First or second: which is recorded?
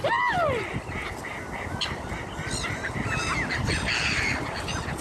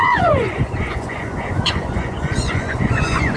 first